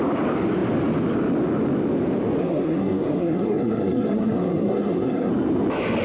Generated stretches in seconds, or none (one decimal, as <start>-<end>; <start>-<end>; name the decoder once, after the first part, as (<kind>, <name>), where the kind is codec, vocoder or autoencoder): 2.4-5.3 (codec, SNAC)